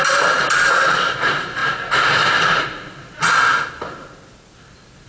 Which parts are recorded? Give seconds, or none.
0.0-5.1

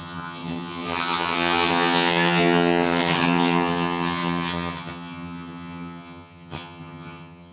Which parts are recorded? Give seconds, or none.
none